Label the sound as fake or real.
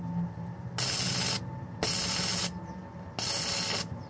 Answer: real